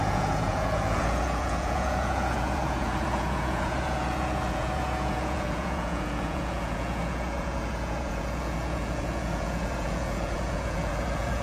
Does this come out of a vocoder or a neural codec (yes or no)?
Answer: yes